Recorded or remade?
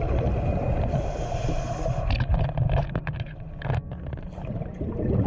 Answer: recorded